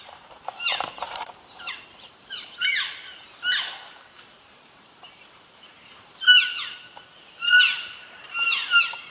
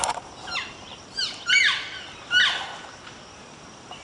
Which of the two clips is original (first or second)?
second